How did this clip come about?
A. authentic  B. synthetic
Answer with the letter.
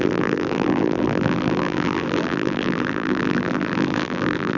B